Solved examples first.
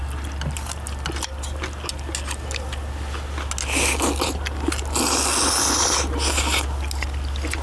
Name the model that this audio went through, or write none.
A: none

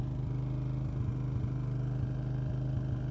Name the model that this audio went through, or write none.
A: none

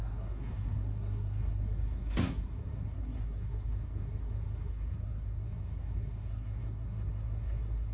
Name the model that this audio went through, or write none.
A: codec, SNAC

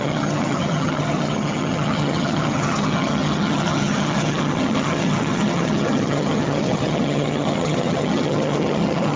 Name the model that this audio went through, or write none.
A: vocoder, HiFi-GAN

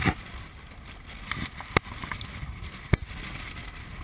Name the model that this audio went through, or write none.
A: none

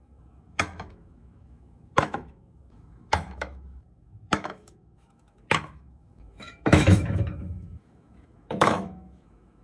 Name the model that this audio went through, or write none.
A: autoencoder, DAC-VAE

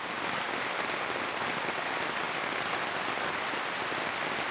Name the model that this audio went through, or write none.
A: none